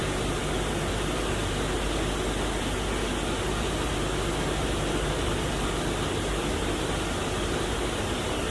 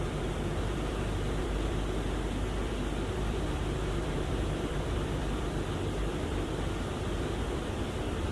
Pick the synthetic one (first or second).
second